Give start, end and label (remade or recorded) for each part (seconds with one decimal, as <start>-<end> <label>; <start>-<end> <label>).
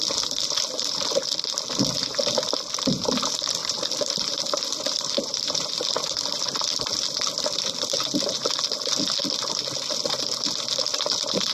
0.0-3.6 recorded; 3.6-5.7 remade; 5.7-11.5 recorded